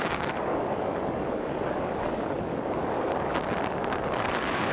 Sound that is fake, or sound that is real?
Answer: fake